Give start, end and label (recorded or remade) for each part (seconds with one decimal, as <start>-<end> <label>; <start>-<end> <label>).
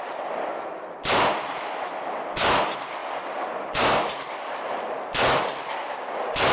0.0-6.5 recorded